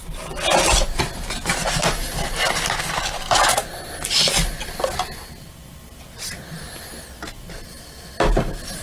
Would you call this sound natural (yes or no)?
yes